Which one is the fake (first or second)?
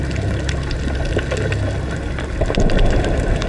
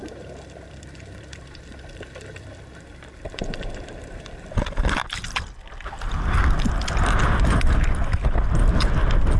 second